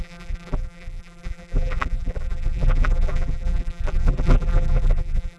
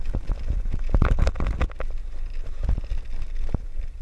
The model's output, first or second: first